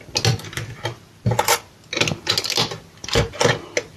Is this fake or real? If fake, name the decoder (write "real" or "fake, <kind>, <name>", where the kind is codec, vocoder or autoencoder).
real